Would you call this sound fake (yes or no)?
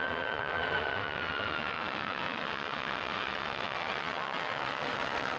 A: yes